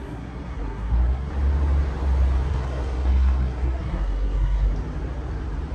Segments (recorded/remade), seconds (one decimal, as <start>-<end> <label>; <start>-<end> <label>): 0.0-1.3 remade; 1.3-2.5 recorded; 2.5-4.7 remade; 4.7-5.7 recorded